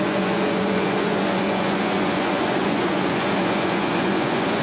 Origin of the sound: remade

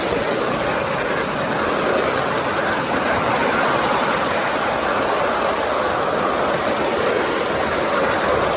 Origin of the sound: recorded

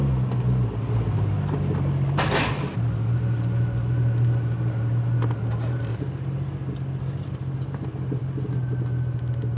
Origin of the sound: recorded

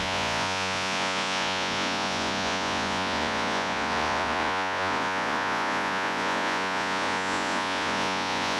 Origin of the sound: remade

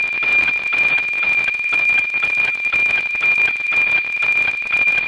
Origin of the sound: remade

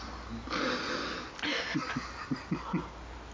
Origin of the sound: recorded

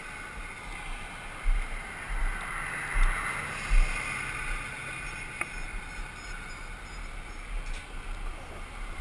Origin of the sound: recorded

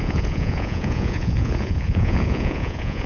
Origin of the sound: remade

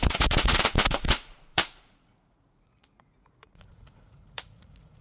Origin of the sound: remade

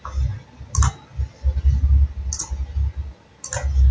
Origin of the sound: recorded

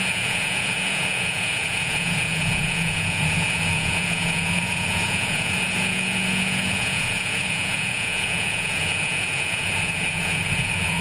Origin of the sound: remade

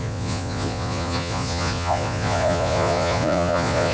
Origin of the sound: remade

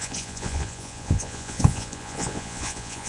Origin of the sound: remade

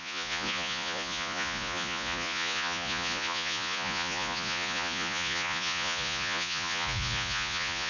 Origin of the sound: remade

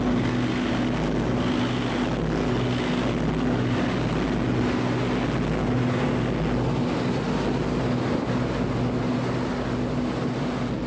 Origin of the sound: recorded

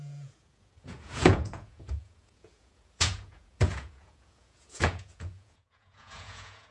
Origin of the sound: remade